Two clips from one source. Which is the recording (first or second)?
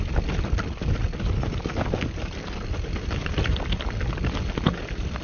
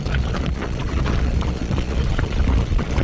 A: first